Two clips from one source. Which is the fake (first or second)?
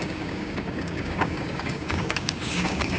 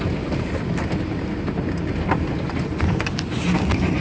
first